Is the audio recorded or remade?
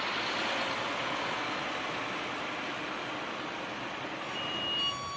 recorded